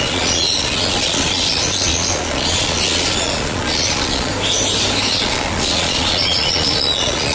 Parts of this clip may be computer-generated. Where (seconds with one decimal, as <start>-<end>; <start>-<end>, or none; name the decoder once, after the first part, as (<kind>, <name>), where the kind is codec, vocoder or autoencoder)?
0.0-4.3 (vocoder, Vocos); 5.1-7.3